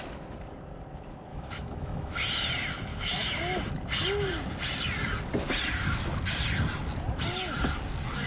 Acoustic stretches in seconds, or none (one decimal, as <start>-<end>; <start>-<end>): 0.0-1.3; 2.1-2.9; 3.4-8.3